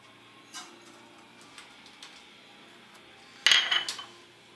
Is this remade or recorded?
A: recorded